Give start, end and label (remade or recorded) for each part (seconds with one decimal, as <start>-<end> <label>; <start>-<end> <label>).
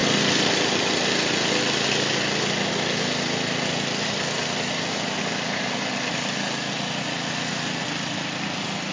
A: 0.0-8.9 recorded